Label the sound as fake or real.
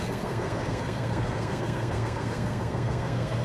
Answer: fake